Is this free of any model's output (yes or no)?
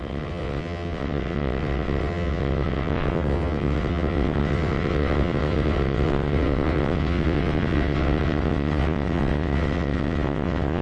no